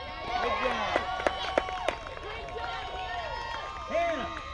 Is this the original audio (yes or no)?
yes